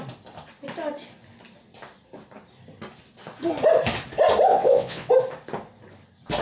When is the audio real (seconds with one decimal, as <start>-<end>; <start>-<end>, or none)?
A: 0.0-4.5; 5.1-6.4